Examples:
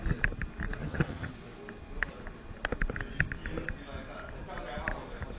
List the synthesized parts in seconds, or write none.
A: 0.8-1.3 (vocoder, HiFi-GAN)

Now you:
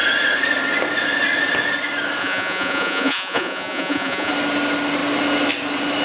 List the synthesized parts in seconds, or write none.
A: 2.2-4.3 (vocoder, Vocos)

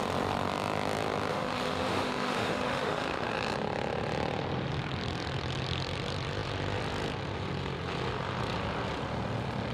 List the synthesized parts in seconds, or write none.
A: 1.3-3.3 (autoencoder, DAC-VAE)